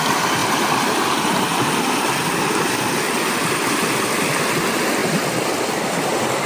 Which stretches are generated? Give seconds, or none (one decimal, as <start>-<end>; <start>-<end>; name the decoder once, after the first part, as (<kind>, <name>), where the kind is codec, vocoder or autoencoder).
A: 0.0-6.5 (vocoder, BigVGAN v2)